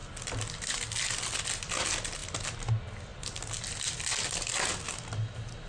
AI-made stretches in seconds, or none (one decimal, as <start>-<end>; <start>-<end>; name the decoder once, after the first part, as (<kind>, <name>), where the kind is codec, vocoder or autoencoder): none